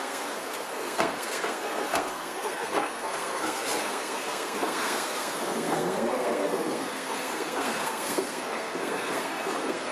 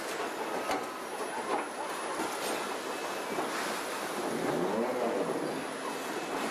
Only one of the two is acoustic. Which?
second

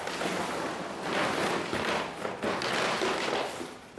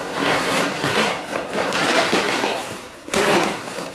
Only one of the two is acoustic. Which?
first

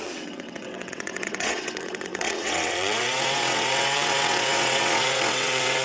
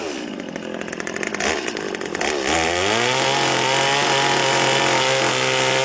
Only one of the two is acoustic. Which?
second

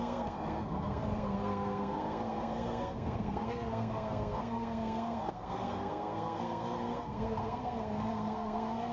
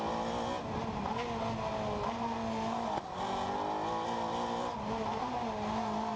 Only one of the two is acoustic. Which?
second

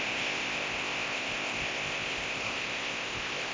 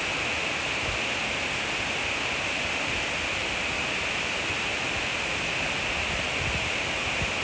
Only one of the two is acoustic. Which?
second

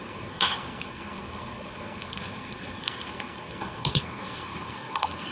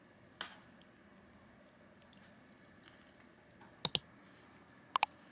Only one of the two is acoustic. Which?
second